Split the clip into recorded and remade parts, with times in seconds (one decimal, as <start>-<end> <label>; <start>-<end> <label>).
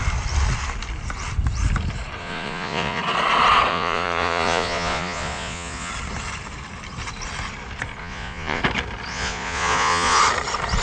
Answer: 0.0-2.2 recorded; 2.2-3.0 remade; 3.0-3.7 recorded; 3.7-5.9 remade; 5.9-8.0 recorded; 8.0-8.6 remade; 8.6-9.1 recorded; 9.1-10.2 remade; 10.2-10.8 recorded